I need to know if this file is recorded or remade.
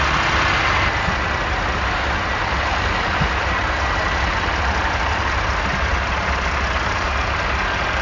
recorded